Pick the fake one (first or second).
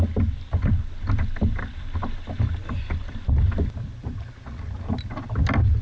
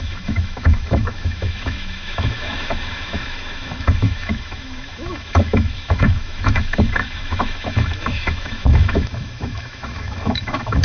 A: second